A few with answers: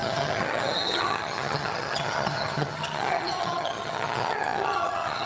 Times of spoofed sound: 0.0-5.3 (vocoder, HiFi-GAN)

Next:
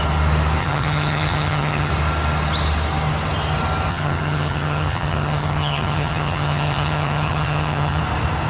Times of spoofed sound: 0.6-1.9 (vocoder, HiFi-GAN); 3.9-8.0

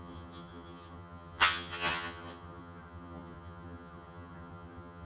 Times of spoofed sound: 0.0-5.0 (vocoder, HiFi-GAN)

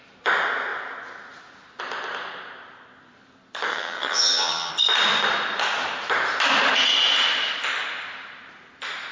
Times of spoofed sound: 3.7-4.7 (vocoder, HiFi-GAN)

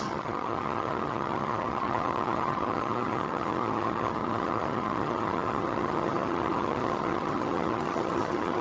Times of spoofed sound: 0.0-8.6 (vocoder, HiFi-GAN)

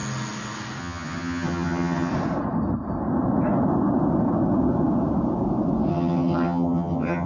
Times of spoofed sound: 0.8-2.1 (vocoder, HiFi-GAN); 5.9-7.3

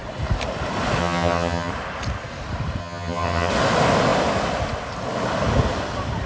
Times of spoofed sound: 1.0-1.7 (vocoder, HiFi-GAN); 2.8-3.5